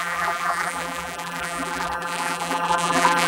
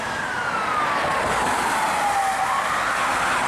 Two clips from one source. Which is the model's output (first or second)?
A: first